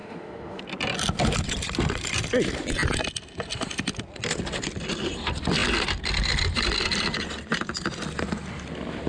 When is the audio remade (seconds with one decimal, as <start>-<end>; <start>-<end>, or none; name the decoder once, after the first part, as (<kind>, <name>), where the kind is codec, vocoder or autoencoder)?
0.0-0.6 (autoencoder, DAC-VAE)